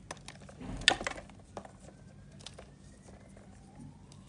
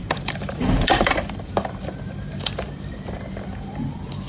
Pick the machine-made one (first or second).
second